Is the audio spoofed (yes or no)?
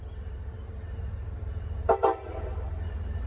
yes